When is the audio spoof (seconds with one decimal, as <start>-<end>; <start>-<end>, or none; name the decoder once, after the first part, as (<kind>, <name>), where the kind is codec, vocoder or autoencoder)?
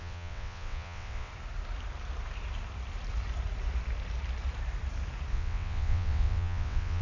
0.0-1.3 (vocoder, WaveNeXt); 5.3-7.0